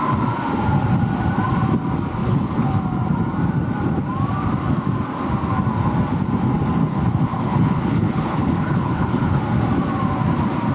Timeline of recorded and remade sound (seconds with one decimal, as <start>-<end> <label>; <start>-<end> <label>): 0.0-2.2 recorded; 2.2-2.8 remade; 2.8-6.8 recorded; 6.8-9.4 remade; 9.4-10.7 recorded